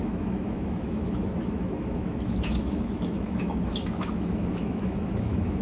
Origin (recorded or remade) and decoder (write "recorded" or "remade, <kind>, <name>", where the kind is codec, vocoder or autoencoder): remade, autoencoder, DAC-VAE